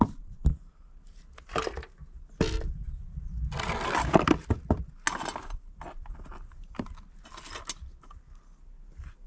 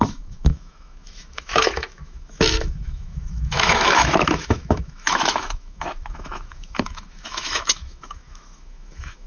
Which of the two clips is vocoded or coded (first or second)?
second